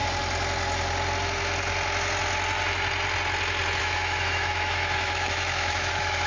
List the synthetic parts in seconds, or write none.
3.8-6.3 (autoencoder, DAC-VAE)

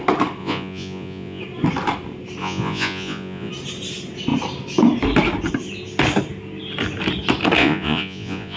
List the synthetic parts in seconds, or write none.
0.4-1.4 (vocoder, Vocos); 2.4-3.5; 7.6-8.6